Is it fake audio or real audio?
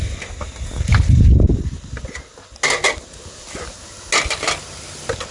real